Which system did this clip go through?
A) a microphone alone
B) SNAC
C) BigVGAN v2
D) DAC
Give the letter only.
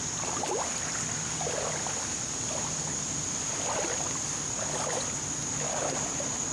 A